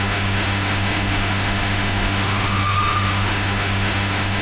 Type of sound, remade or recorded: remade